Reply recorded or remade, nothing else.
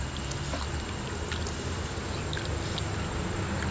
recorded